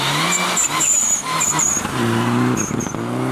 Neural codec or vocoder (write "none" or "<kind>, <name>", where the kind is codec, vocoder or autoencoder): none